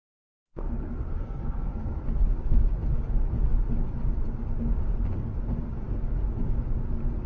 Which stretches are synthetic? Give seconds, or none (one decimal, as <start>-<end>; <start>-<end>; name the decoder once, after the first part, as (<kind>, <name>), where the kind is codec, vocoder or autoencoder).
0.5-2.0 (codec, SNAC)